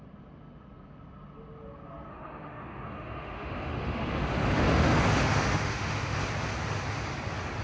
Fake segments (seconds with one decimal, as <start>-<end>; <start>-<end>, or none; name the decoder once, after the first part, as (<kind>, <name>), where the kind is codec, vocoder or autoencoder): 2.1-6.2 (autoencoder, DAC-VAE)

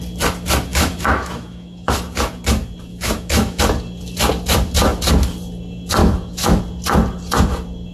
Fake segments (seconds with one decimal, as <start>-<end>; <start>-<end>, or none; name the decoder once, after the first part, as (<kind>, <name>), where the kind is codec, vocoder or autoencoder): 0.7-1.9 (autoencoder, DAC-VAE); 2.9-3.6; 6.0-6.6